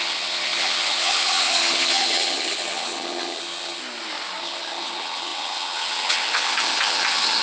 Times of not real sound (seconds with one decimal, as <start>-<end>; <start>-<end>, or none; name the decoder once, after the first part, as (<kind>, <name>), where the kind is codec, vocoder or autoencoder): 0.0-3.8 (vocoder, HiFi-GAN); 4.4-7.4